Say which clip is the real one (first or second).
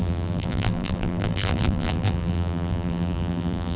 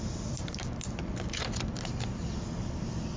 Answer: second